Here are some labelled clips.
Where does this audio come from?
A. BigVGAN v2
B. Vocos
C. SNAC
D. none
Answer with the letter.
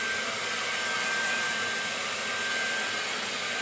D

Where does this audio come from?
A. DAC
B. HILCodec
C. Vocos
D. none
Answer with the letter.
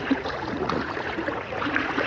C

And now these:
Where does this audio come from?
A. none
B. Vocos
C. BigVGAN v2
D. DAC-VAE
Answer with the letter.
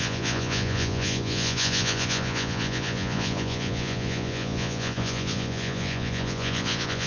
B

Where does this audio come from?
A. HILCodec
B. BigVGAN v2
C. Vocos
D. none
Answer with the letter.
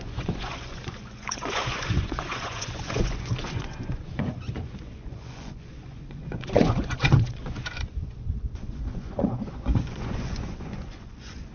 C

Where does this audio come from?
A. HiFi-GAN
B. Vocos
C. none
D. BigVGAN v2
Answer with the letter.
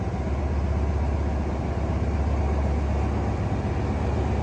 C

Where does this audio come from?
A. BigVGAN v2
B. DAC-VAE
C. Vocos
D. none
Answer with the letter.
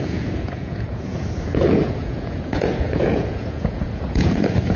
C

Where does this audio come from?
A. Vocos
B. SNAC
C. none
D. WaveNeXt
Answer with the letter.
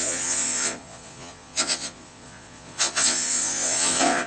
A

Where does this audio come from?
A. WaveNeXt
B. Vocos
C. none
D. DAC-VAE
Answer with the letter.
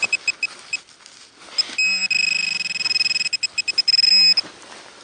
C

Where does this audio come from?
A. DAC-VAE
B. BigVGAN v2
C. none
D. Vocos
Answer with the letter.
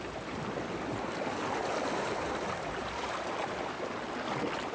C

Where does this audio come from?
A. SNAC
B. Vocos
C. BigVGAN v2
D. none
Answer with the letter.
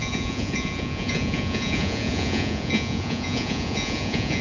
B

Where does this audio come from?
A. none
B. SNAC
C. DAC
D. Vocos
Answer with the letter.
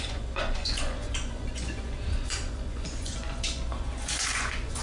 D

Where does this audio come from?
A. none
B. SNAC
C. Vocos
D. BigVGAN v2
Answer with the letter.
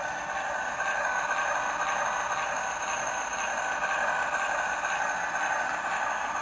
A